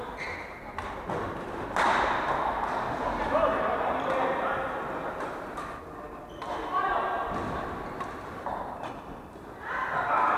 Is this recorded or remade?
recorded